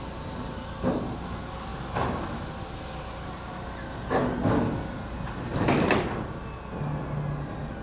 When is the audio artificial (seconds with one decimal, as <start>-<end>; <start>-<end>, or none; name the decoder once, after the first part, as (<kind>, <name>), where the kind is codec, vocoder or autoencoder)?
none

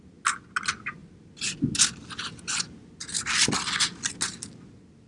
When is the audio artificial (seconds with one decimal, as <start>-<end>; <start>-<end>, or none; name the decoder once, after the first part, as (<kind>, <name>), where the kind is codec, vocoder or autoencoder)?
none

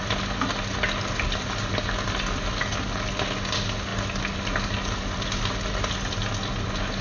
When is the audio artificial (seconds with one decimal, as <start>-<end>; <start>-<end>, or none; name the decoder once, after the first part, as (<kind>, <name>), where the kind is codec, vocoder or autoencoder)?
none

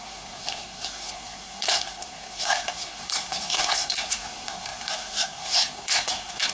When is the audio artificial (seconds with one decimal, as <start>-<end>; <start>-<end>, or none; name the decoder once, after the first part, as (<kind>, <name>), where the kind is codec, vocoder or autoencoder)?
0.0-6.5 (codec, SNAC)

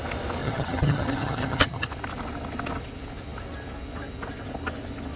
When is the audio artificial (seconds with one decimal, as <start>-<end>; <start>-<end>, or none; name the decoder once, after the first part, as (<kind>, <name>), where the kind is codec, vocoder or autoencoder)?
0.4-1.9 (vocoder, HiFi-GAN)

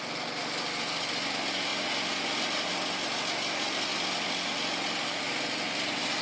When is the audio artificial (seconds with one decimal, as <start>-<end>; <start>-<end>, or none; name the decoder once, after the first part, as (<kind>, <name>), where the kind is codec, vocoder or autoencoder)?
none

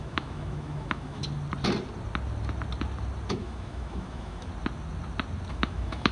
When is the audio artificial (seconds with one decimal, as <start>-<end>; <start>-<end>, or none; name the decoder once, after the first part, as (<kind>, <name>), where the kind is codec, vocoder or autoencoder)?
0.0-1.2 (autoencoder, DAC-VAE); 3.3-4.5; 5.5-6.1

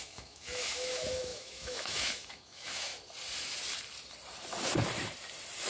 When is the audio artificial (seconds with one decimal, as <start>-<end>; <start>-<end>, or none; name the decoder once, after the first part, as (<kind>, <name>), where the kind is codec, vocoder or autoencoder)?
0.0-2.9 (autoencoder, DAC-VAE)